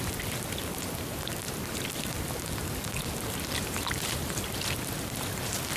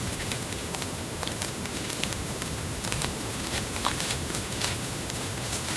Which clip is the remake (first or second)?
second